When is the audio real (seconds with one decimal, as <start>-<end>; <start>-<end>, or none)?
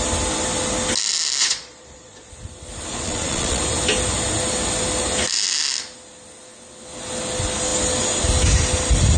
0.0-1.4; 2.3-2.9; 3.6-9.2